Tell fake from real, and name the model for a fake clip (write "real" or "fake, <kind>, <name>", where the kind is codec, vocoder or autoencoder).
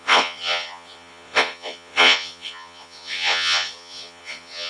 fake, vocoder, Vocos